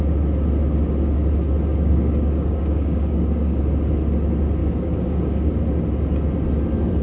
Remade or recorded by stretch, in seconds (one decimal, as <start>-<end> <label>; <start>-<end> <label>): 0.0-1.7 recorded; 1.7-3.6 remade; 3.6-4.6 recorded; 4.6-5.5 remade; 5.5-7.0 recorded